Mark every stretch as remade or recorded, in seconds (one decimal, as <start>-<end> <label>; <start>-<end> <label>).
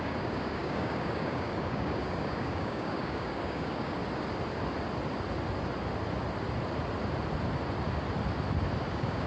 0.0-4.0 remade; 4.0-8.9 recorded; 8.9-9.3 remade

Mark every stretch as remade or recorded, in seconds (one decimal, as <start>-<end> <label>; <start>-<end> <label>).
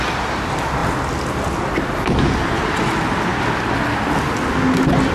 0.0-5.1 recorded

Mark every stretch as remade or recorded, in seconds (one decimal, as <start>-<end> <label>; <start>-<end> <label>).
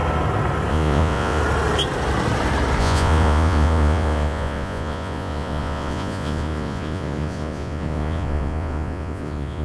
0.0-0.7 recorded; 0.7-1.4 remade; 1.4-2.8 recorded; 2.8-9.6 remade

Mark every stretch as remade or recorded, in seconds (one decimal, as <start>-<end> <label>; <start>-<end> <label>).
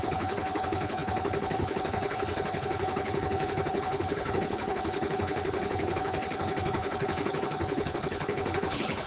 0.0-9.1 remade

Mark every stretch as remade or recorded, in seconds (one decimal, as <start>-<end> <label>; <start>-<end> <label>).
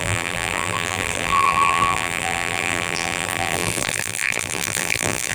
0.0-5.3 remade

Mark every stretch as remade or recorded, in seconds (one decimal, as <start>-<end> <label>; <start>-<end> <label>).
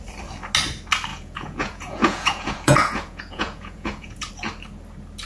0.0-1.1 recorded; 1.1-4.3 remade; 4.3-5.3 recorded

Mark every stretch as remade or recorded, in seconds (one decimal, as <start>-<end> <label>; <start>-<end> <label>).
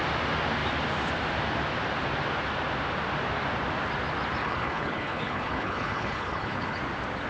0.0-4.4 recorded; 4.4-6.8 remade; 6.8-7.3 recorded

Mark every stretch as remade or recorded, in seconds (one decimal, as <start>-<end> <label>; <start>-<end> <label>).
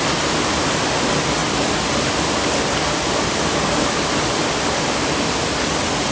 0.0-6.1 recorded